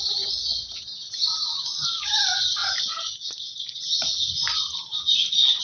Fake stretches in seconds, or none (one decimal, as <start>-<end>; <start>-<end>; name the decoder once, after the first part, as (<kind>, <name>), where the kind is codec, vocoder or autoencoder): none